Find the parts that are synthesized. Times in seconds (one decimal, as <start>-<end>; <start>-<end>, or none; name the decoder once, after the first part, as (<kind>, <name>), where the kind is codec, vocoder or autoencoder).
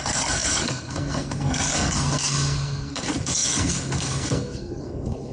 0.0-5.3 (codec, SNAC)